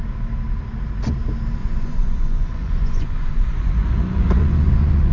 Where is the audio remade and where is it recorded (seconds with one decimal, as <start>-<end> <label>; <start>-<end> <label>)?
0.0-1.6 recorded; 1.6-5.1 remade